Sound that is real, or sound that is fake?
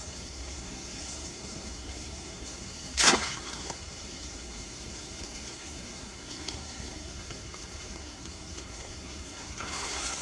fake